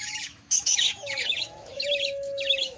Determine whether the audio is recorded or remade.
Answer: remade